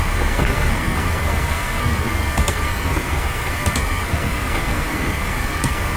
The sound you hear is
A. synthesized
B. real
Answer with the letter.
A